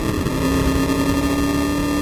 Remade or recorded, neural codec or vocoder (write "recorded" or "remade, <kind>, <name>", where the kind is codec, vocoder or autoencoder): recorded